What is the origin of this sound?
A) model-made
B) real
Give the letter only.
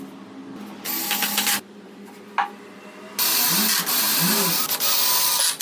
B